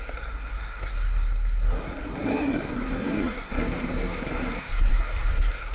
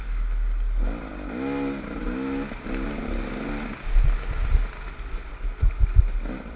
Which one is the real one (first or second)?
second